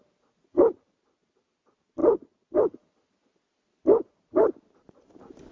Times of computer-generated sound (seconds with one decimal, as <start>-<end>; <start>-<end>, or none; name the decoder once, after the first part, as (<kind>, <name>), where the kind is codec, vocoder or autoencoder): none